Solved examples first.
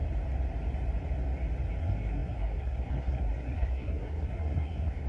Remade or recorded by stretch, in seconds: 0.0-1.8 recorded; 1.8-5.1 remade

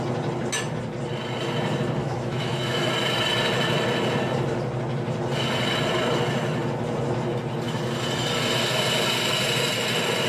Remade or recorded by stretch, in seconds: 0.0-2.0 recorded; 2.0-2.9 remade; 2.9-10.3 recorded

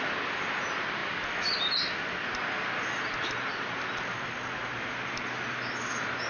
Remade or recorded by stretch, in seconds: 0.0-6.3 recorded

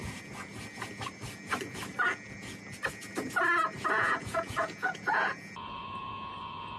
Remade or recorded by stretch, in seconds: 0.0-3.9 recorded; 3.9-6.8 remade

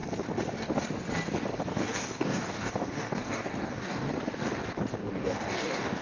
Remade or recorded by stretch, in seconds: 0.0-1.7 recorded; 1.7-4.1 remade; 4.1-5.0 recorded; 5.0-6.0 remade

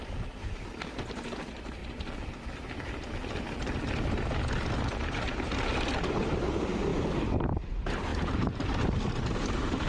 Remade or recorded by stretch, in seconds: 0.0-1.8 remade; 1.8-5.2 recorded; 5.2-6.9 remade; 6.9-7.4 recorded; 7.4-9.9 remade

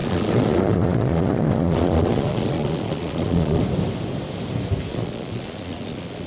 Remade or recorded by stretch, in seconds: 0.0-3.6 remade; 3.6-4.9 recorded; 4.9-6.3 remade

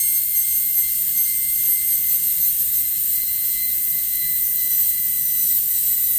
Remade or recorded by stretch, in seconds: 0.0-6.2 recorded